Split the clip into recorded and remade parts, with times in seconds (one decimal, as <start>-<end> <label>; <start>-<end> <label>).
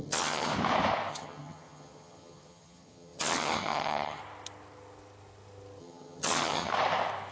0.0-0.5 remade; 0.5-1.1 recorded; 1.1-4.2 remade; 4.2-5.8 recorded; 5.8-6.7 remade; 6.7-7.3 recorded